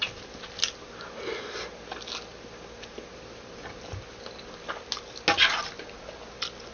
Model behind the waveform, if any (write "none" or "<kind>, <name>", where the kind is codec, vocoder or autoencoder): none